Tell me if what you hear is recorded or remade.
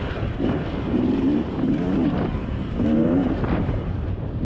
remade